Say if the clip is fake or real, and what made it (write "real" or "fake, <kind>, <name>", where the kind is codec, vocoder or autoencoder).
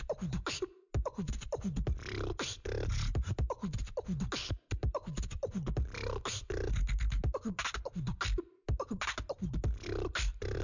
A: real